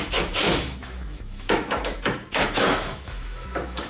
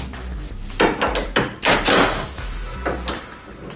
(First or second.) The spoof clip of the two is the first